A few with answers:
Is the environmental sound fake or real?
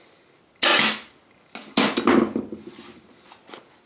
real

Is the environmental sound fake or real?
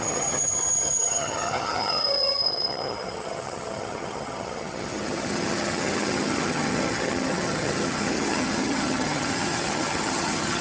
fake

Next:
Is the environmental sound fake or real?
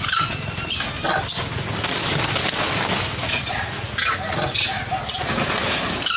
real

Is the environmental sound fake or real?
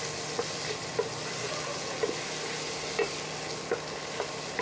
real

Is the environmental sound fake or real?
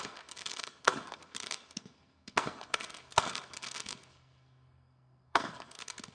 fake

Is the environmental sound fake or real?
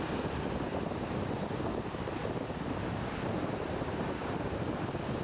real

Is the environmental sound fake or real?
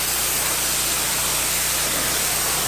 real